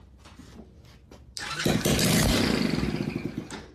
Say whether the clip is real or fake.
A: real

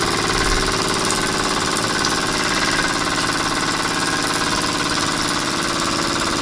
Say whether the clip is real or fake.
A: real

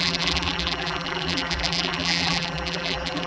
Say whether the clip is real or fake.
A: fake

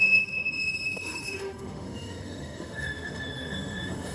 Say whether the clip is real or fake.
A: fake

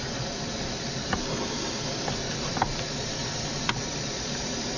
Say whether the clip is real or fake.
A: real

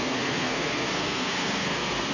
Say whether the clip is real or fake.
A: fake